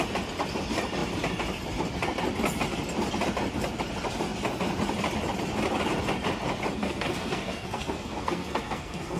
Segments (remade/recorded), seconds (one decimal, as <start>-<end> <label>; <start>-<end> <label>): 0.0-6.8 recorded; 6.8-9.2 remade